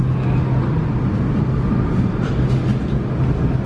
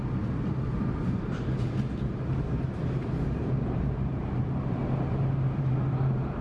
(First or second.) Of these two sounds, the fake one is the second